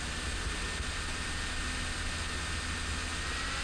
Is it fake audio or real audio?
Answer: real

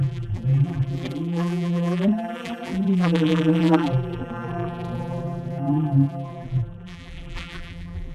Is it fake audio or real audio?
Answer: fake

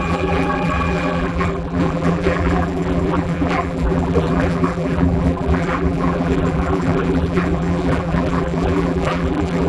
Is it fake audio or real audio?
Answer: fake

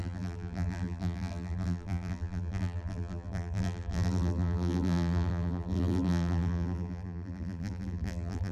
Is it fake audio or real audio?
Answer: fake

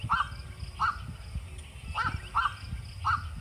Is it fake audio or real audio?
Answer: real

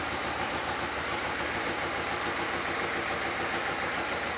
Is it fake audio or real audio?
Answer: fake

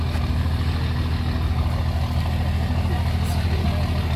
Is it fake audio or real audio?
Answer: real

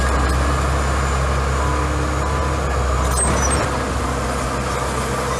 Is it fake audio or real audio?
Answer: real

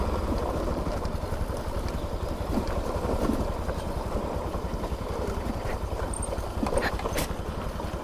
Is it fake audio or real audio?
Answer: fake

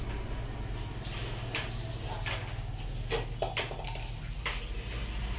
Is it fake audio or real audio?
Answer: real